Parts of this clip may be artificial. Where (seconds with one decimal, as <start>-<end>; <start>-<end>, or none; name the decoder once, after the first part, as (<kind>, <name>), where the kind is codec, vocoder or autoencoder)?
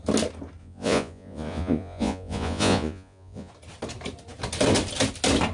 0.6-3.5 (vocoder, Vocos)